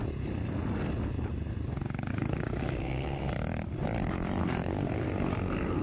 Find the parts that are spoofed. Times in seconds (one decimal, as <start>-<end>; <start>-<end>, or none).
2.1-3.3; 4.4-5.8